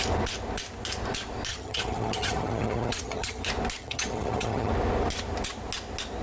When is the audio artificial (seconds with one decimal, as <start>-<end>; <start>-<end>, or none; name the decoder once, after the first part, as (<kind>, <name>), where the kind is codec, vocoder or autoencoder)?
1.5-3.4 (vocoder, HiFi-GAN); 3.8-4.7